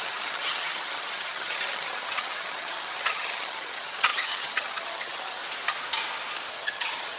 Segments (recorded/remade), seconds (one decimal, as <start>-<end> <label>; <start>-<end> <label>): 0.0-5.4 remade; 5.4-6.5 recorded; 6.5-7.2 remade